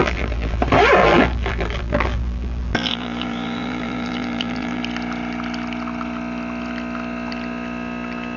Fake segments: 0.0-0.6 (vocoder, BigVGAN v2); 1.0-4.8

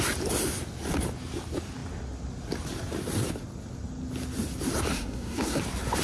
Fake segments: 4.9-5.6 (codec, SNAC)

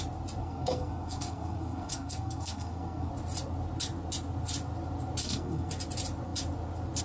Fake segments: 0.4-3.1 (codec, SNAC); 5.2-5.7

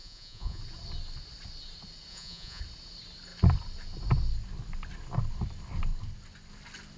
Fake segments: 0.0-0.6 (vocoder, Vocos); 2.1-2.6

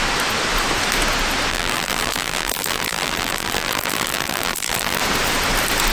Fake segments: 1.5-5.0 (vocoder, BigVGAN v2)